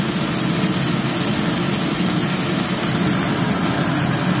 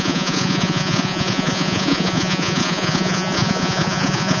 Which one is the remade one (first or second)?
second